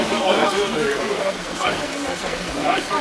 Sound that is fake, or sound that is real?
fake